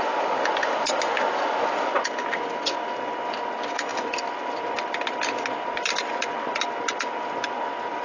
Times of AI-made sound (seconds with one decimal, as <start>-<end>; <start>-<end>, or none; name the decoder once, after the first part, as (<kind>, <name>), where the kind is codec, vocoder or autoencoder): none